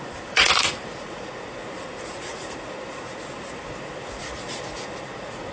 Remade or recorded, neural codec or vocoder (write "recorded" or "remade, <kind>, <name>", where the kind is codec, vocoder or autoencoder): remade, vocoder, Vocos